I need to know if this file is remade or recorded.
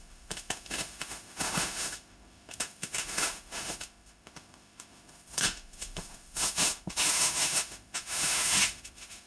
remade